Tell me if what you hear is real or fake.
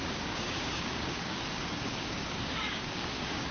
fake